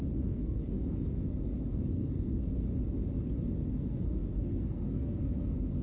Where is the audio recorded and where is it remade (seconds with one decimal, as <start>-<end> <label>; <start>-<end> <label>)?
0.0-2.7 remade; 2.7-3.7 recorded; 3.7-5.8 remade